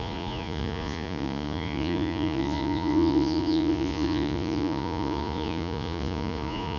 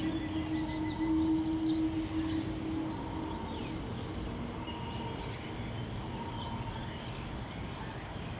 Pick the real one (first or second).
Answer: second